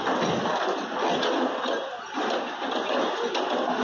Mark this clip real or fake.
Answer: real